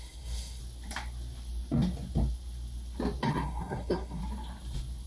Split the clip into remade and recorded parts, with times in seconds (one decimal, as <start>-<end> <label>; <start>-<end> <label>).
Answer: 0.0-0.6 remade; 0.6-3.3 recorded; 3.3-4.2 remade; 4.2-5.1 recorded

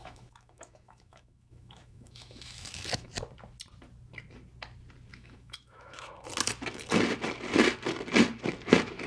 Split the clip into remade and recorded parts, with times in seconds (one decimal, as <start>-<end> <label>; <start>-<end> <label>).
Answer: 0.0-3.1 remade; 3.1-5.1 recorded; 5.1-6.1 remade; 6.1-9.1 recorded

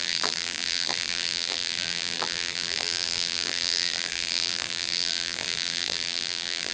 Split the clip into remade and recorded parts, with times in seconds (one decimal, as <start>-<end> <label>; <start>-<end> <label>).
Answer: 0.0-6.7 remade

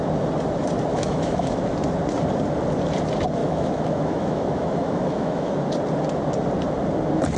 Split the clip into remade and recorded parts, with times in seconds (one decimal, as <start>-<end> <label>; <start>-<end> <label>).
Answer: 0.0-0.9 recorded; 0.9-1.6 remade; 1.6-3.4 recorded; 3.4-5.5 remade; 5.5-7.4 recorded

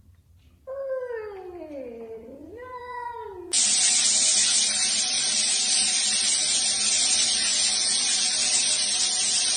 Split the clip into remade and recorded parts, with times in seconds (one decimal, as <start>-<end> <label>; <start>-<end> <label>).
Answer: 0.0-2.4 recorded; 2.4-3.6 remade; 3.6-7.4 recorded; 7.4-8.3 remade; 8.3-9.6 recorded

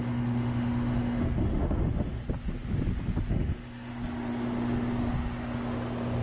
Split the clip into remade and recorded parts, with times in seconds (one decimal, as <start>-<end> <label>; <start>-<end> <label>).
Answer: 0.0-2.2 remade; 2.2-3.3 recorded; 3.3-3.9 remade; 3.9-6.2 recorded